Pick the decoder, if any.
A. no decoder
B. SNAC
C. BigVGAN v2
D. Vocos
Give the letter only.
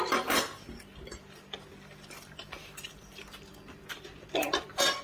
C